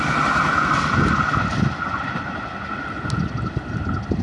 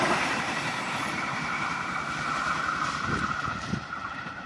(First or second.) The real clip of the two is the first